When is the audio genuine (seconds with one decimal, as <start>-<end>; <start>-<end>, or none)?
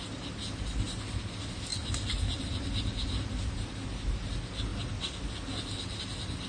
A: 0.0-6.5